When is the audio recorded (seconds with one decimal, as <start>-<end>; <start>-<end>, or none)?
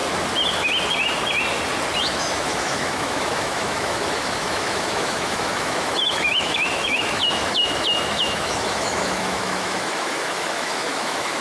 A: 0.0-2.0